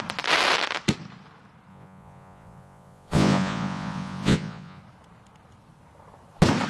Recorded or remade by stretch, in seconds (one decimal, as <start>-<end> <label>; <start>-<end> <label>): 0.0-1.7 recorded; 1.7-4.8 remade; 4.8-6.7 recorded